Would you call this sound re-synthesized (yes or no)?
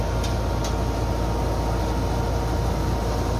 no